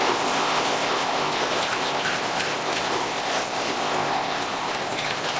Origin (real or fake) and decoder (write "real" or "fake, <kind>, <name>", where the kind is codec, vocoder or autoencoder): fake, codec, ZipCodec